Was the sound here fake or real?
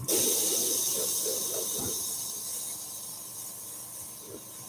real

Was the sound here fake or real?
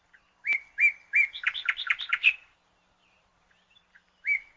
fake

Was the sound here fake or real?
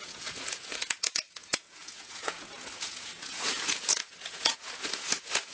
fake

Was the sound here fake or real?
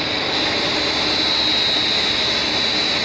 real